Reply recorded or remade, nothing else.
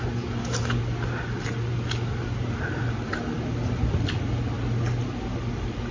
recorded